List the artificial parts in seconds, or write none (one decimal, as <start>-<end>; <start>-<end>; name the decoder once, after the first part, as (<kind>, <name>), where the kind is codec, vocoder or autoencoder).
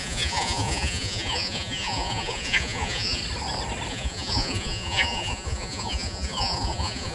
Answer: 0.0-3.2 (vocoder, Vocos); 3.9-7.1